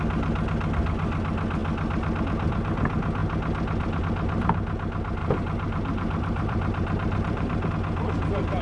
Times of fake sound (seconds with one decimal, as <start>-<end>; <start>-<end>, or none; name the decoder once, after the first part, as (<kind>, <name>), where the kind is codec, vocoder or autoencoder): 5.2-7.7 (vocoder, BigVGAN v2)